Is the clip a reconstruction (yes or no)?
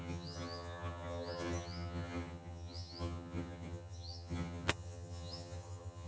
yes